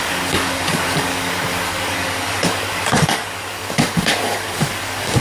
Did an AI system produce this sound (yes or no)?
yes